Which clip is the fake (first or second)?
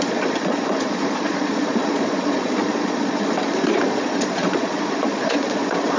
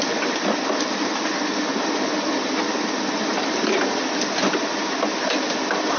first